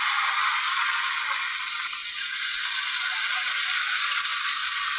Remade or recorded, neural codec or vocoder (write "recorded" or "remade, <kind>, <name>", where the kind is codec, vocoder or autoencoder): recorded